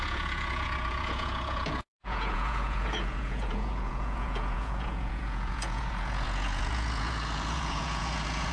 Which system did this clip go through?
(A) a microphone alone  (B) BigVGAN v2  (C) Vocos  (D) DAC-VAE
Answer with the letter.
C